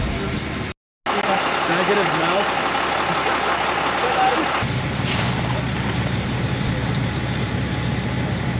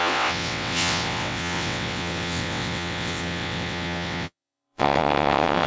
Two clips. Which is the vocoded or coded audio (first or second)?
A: second